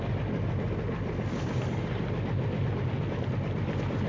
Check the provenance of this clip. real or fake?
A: real